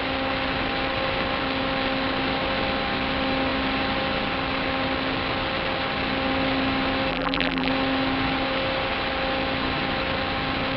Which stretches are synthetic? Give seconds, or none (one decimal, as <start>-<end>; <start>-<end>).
7.1-7.7

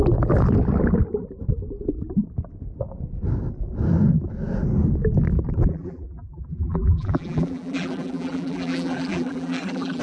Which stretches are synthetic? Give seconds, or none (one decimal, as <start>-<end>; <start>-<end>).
5.7-10.0

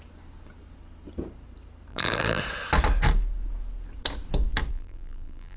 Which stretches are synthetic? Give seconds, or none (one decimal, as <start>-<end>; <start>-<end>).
1.9-2.4; 4.7-5.6

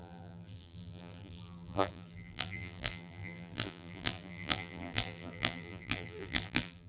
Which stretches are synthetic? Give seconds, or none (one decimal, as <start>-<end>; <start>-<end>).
0.0-6.9

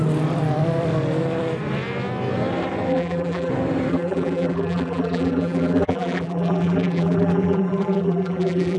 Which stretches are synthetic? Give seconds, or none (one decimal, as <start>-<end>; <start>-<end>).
2.9-3.5; 3.9-8.8

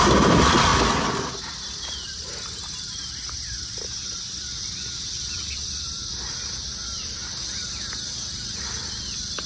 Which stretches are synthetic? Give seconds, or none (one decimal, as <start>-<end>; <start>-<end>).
0.0-0.7; 4.6-7.2; 8.6-9.5